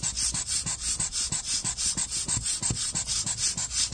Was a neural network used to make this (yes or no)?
no